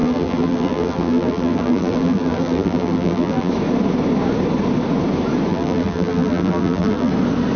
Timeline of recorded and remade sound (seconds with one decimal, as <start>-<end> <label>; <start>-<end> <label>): 0.0-3.5 remade; 3.5-5.5 recorded; 5.5-7.1 remade; 7.1-7.6 recorded